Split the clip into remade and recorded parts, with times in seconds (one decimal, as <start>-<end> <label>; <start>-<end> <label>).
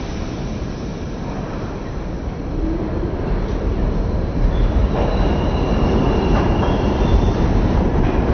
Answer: 0.0-4.8 remade; 4.8-6.2 recorded; 6.2-8.3 remade